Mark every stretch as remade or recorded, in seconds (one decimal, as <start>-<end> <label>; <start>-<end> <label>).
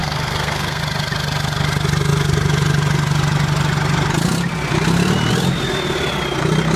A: 0.0-0.8 remade; 0.8-6.8 recorded